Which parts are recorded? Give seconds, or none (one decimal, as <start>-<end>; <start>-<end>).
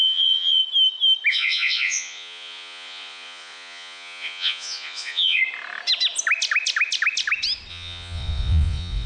0.6-1.3; 5.4-7.7